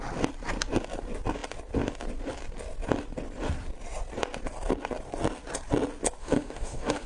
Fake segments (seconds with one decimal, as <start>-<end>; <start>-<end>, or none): 6.2-7.1